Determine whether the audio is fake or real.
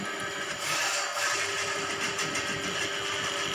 real